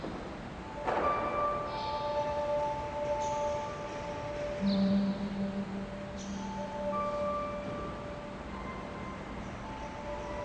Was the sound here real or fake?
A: real